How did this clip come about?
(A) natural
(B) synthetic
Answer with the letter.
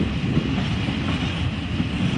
A